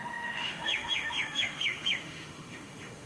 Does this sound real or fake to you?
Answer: fake